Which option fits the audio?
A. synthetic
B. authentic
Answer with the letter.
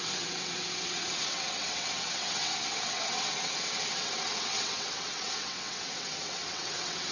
A